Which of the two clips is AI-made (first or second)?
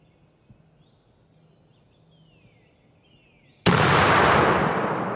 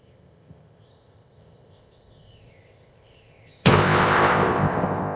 second